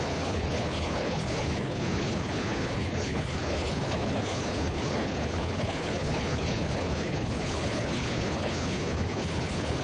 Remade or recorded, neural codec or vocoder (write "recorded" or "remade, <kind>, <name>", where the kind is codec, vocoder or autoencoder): remade, codec, HILCodec